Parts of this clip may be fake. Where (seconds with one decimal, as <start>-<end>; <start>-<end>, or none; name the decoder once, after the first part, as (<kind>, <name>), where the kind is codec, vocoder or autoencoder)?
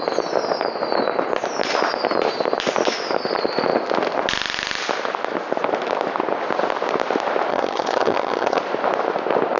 7.5-8.6 (vocoder, HiFi-GAN)